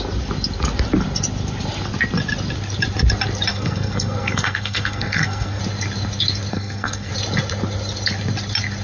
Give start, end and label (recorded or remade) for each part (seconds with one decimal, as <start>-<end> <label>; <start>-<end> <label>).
0.0-3.5 recorded; 3.5-5.6 remade; 5.6-6.5 recorded; 6.5-7.1 remade; 7.1-8.8 recorded